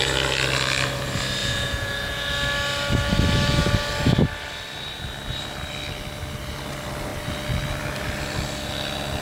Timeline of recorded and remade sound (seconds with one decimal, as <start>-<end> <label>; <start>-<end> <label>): 0.0-1.4 recorded; 1.4-2.3 remade; 2.3-9.2 recorded